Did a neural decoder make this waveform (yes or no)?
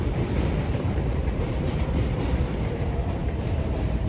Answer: yes